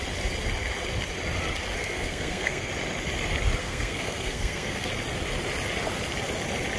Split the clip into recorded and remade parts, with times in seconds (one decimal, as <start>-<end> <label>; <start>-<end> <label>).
0.0-1.8 recorded; 1.8-2.7 remade; 2.7-3.6 recorded; 3.6-4.9 remade; 4.9-6.8 recorded